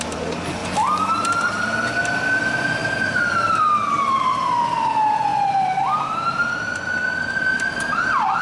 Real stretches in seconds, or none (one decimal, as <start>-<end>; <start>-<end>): 0.0-0.6; 1.9-2.8; 4.6-5.3; 6.5-8.4